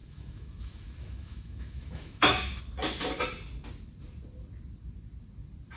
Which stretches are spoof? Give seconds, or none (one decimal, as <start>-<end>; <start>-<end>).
0.0-2.6